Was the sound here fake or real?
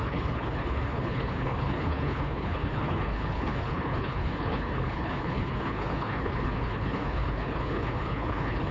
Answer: fake